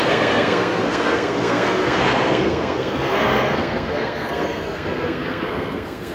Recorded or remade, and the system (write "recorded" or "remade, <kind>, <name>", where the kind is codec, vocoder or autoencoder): remade, codec, SNAC